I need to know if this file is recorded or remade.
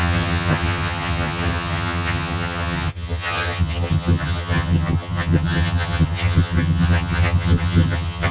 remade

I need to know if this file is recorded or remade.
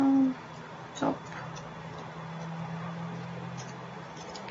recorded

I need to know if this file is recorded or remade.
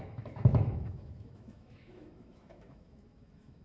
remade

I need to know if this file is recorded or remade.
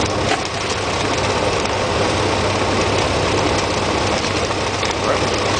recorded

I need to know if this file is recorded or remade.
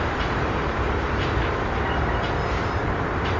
remade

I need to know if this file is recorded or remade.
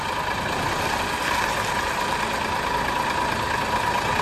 recorded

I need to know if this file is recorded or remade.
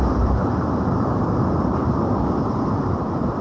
recorded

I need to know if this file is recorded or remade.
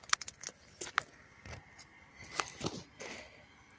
recorded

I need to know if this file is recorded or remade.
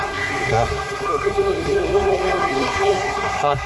remade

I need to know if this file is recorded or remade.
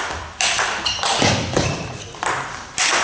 recorded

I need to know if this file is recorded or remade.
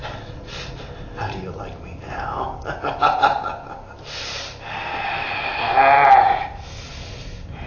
recorded